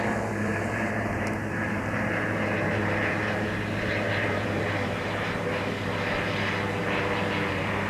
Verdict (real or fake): fake